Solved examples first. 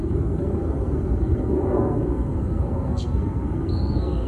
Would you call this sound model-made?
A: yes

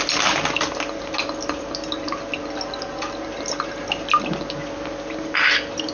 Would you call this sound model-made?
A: no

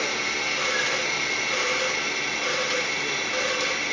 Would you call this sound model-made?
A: no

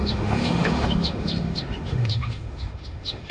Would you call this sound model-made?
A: yes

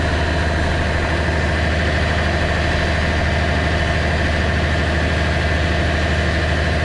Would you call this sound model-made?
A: no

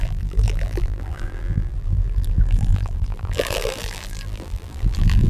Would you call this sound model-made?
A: yes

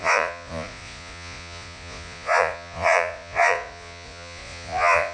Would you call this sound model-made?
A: yes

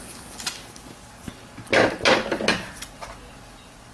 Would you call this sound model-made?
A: no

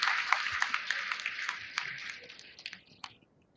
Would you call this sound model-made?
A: no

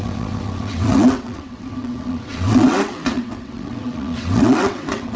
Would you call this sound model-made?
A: yes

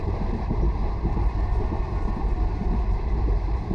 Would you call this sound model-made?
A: yes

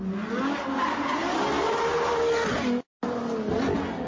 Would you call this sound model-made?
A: no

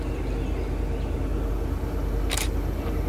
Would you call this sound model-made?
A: no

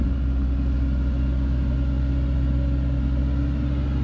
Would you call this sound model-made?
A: no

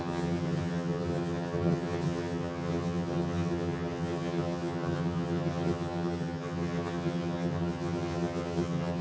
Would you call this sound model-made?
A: yes